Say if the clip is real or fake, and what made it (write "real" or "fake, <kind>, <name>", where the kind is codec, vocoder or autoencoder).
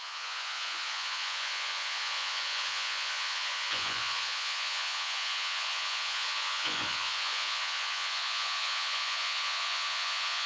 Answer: fake, vocoder, Vocos